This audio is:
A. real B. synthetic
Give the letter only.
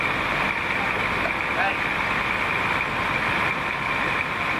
A